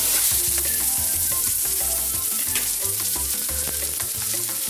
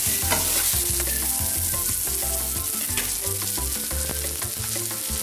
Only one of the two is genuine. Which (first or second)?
second